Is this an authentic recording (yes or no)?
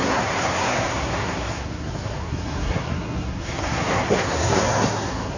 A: no